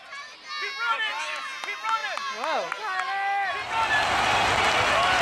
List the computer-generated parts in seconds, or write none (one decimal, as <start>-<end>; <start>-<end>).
none

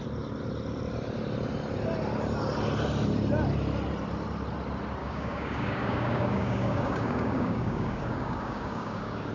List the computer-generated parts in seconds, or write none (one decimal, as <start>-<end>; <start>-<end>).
5.0-9.3

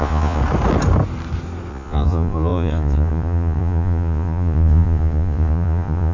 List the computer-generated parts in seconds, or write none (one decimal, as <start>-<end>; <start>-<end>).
0.0-0.4; 1.7-6.1

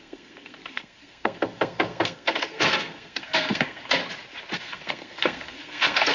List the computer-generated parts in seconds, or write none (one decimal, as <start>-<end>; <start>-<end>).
0.0-4.0; 4.6-6.1

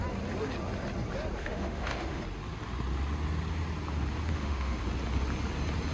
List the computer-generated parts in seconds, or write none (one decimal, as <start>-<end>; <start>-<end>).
1.4-2.2; 4.3-4.8